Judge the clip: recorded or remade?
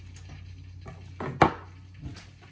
recorded